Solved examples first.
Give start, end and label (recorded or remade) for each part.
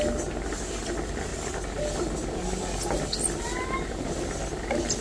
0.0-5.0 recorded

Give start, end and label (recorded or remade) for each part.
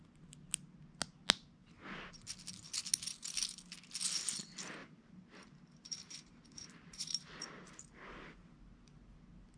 0.0-4.8 recorded; 4.8-7.8 remade; 7.8-9.6 recorded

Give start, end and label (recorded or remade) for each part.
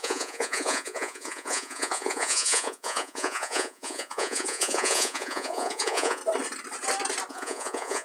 0.0-6.2 remade; 6.2-7.3 recorded; 7.3-8.0 remade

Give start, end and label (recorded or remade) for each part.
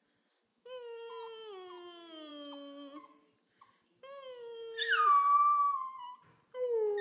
0.0-0.5 recorded; 0.5-1.1 remade; 1.1-7.0 recorded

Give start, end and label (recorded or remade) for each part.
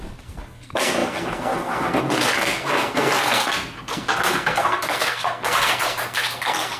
0.0-6.8 remade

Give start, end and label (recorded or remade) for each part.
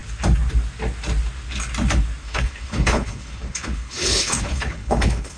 0.0-2.2 recorded; 2.2-5.4 remade